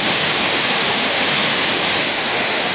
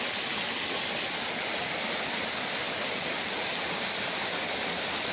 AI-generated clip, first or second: first